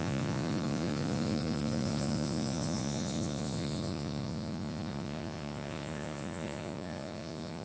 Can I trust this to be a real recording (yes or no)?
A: no